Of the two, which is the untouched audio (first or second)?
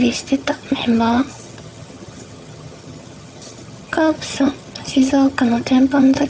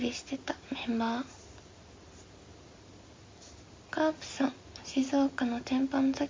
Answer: second